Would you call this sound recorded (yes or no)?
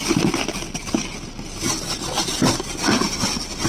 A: yes